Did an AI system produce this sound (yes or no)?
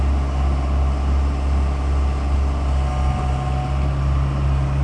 no